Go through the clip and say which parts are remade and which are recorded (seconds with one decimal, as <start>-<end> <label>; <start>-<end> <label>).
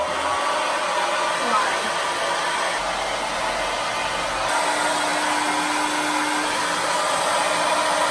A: 0.0-8.1 recorded